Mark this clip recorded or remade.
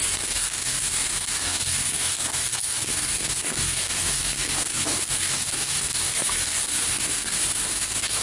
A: remade